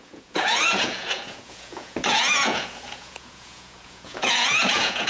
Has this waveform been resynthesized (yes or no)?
yes